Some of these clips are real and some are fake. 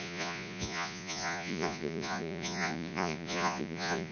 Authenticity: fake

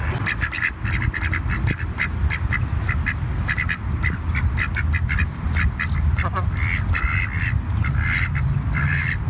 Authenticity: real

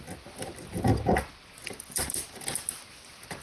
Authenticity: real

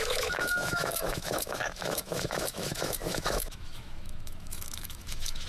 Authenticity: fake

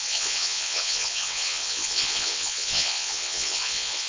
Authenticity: fake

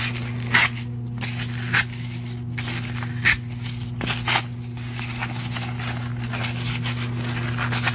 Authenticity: real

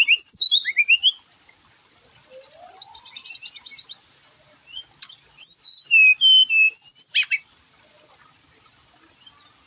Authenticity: real